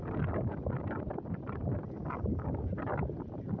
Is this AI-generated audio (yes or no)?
no